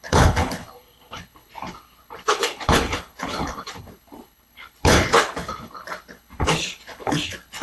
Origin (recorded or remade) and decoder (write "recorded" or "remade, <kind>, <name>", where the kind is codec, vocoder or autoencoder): remade, codec, HILCodec